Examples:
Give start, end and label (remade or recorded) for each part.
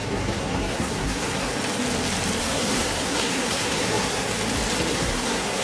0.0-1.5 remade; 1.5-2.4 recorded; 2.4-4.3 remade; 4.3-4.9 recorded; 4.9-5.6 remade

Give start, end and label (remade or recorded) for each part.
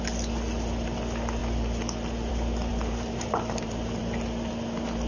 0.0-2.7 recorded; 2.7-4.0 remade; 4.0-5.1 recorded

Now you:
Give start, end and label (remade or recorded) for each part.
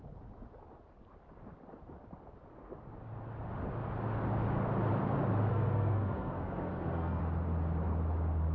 0.0-5.5 recorded; 5.5-7.2 remade; 7.2-8.5 recorded